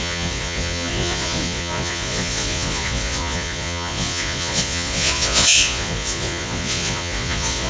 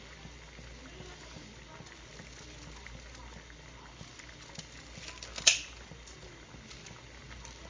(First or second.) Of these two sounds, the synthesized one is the first